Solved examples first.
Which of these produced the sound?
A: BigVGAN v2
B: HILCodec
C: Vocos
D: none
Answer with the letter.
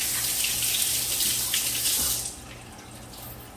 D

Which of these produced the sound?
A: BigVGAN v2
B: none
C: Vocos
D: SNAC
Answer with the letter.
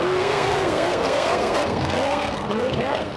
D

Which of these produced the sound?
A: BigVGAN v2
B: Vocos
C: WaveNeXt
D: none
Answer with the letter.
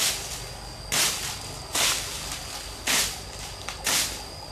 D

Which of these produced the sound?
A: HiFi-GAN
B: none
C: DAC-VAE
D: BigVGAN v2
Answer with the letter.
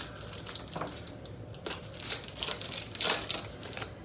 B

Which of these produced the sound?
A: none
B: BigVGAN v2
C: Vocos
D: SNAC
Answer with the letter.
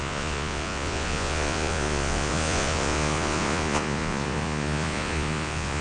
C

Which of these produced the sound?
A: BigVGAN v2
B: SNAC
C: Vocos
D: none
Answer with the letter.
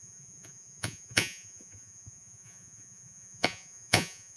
C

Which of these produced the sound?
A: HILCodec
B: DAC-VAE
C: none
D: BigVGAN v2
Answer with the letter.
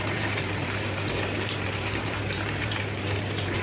D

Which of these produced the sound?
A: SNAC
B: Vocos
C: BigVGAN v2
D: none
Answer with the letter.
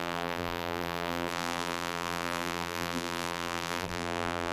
C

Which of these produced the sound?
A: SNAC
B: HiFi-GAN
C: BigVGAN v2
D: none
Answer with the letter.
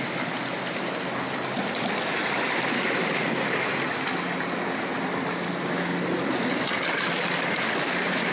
D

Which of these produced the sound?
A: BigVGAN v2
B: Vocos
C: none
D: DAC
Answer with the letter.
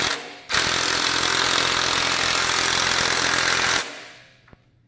C